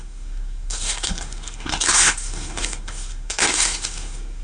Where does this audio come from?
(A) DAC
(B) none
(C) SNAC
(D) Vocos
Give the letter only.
C